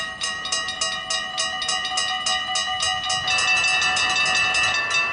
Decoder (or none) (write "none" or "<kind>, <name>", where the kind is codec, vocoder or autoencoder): none